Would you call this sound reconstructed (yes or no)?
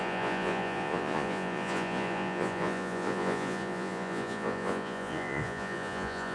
yes